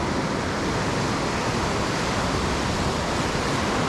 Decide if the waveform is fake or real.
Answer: real